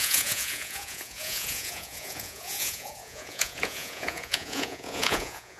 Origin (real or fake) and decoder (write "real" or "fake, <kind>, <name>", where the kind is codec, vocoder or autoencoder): fake, vocoder, Vocos